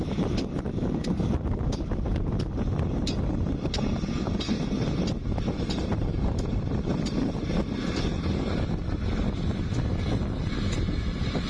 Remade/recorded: recorded